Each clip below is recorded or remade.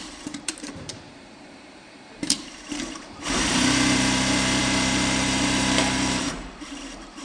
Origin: remade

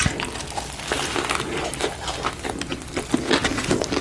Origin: recorded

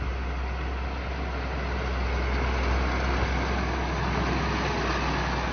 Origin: recorded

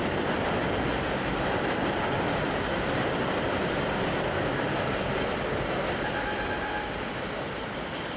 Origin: remade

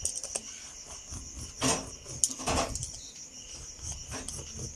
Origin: recorded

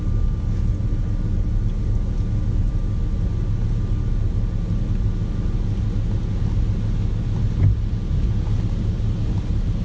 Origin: recorded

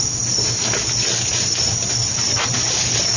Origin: recorded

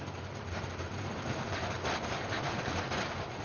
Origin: remade